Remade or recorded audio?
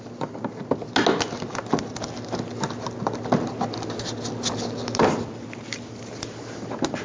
recorded